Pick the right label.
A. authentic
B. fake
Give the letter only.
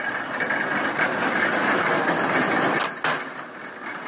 A